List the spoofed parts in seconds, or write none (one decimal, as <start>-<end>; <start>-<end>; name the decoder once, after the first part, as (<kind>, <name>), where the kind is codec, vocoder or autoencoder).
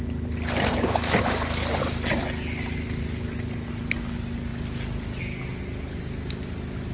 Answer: none